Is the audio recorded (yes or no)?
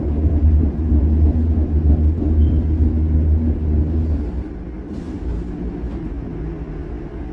yes